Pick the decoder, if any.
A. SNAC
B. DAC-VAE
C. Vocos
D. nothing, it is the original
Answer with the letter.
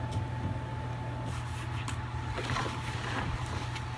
D